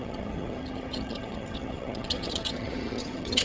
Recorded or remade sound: remade